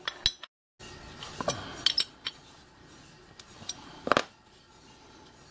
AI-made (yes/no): no